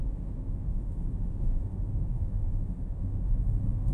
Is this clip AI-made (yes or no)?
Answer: yes